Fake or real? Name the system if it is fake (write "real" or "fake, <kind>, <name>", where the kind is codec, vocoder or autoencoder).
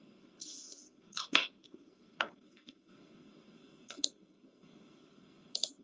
fake, codec, SNAC